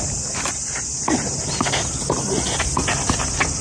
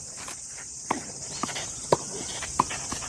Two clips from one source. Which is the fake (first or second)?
second